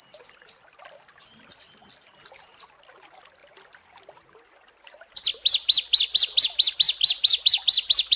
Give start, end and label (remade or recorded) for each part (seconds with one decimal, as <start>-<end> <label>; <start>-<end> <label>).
0.0-8.2 recorded